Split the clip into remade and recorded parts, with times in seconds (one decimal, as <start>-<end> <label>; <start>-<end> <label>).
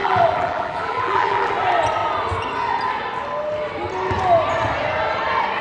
0.0-1.5 remade; 1.5-5.6 recorded